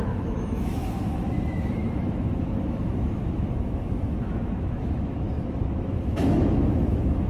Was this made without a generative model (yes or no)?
no